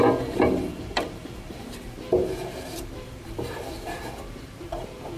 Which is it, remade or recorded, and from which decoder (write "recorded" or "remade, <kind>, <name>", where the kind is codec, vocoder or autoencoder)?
remade, vocoder, BigVGAN v2